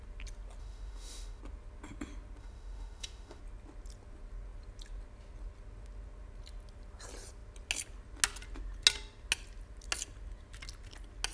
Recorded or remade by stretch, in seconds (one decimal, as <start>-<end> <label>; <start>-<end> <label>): 0.0-0.6 recorded; 0.6-1.4 remade; 1.4-2.4 recorded; 2.4-3.4 remade; 3.4-11.3 recorded